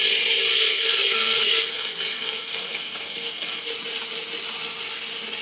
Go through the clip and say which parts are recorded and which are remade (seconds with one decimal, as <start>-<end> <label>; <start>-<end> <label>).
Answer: 0.0-0.5 recorded; 0.5-3.7 remade; 3.7-5.4 recorded